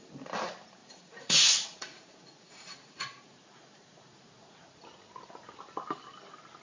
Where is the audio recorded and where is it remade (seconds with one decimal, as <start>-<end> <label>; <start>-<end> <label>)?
0.0-0.8 recorded; 0.8-4.8 remade; 4.8-6.6 recorded